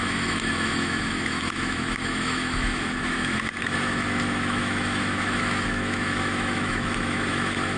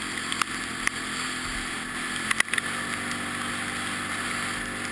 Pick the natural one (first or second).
second